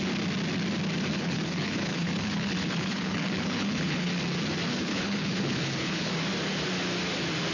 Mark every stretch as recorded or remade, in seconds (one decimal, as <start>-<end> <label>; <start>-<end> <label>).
0.0-1.1 recorded; 1.1-4.1 remade; 4.1-4.7 recorded; 4.7-6.1 remade; 6.1-7.5 recorded